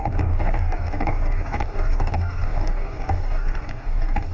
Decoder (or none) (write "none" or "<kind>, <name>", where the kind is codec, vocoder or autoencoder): codec, DAC